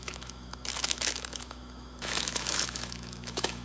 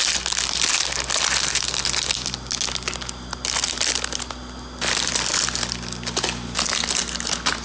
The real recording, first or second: second